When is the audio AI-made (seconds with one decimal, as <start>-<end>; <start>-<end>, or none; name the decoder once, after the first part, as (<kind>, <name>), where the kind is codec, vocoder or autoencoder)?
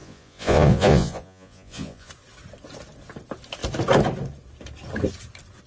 0.0-2.1 (vocoder, Vocos)